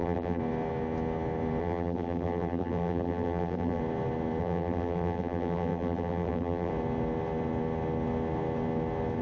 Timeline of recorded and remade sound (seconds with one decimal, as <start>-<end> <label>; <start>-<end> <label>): 0.0-0.4 remade; 0.4-1.6 recorded; 1.6-3.8 remade; 3.8-4.4 recorded; 4.4-6.7 remade; 6.7-9.2 recorded